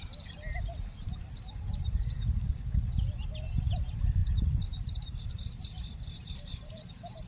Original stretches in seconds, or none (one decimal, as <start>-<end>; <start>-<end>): 0.0-0.7; 2.5-4.2